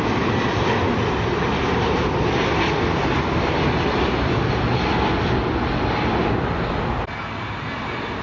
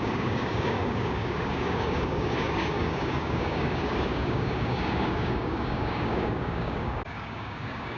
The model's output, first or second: second